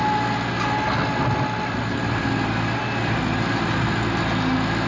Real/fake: real